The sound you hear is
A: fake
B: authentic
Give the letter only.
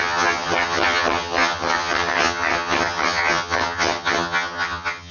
A